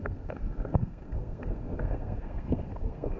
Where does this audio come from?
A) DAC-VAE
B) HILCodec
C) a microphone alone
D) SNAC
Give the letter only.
D